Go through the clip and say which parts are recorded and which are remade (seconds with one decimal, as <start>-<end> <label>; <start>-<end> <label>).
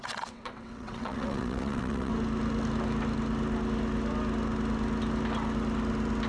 0.0-2.1 remade; 2.1-6.3 recorded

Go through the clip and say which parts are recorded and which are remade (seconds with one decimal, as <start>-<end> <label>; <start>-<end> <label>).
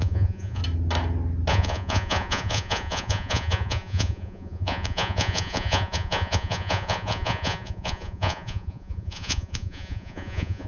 0.0-0.6 remade; 0.6-1.5 recorded; 1.5-10.7 remade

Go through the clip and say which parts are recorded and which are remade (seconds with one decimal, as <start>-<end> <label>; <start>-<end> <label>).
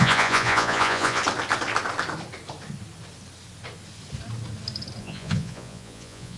0.0-1.2 remade; 1.2-5.0 recorded; 5.0-6.4 remade